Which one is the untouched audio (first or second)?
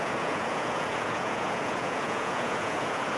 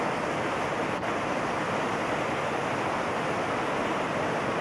second